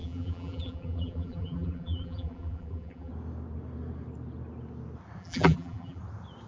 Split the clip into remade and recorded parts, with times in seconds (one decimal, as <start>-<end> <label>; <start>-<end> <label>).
0.0-3.1 remade; 3.1-5.2 recorded; 5.2-6.0 remade; 6.0-6.5 recorded